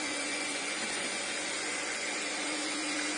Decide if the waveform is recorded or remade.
remade